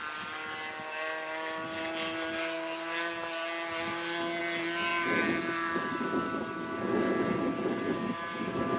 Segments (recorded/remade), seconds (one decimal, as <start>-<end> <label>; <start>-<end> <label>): 0.0-8.8 recorded